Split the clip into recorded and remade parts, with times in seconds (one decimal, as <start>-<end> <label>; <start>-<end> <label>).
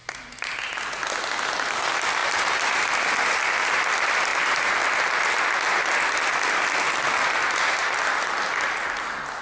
0.0-9.4 recorded